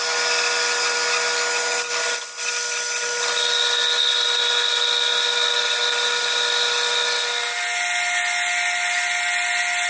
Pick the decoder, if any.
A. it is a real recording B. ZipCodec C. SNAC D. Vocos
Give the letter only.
A